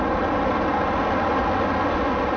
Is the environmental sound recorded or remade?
recorded